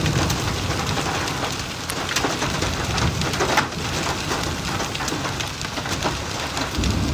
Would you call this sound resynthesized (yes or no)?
no